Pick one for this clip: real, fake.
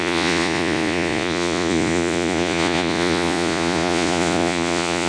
fake